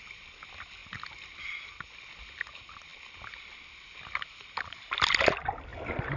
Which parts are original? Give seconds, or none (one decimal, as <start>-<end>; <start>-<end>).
0.0-6.2

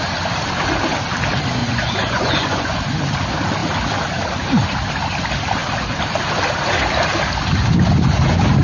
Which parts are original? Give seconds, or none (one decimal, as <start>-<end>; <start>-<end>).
0.0-1.6; 2.8-8.6

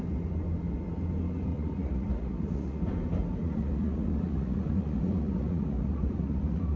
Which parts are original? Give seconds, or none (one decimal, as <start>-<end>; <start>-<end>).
0.0-1.5; 2.8-3.4